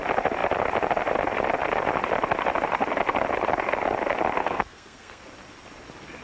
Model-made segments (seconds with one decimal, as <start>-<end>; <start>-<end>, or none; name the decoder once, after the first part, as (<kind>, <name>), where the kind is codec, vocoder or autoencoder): 4.4-5.2 (codec, SNAC)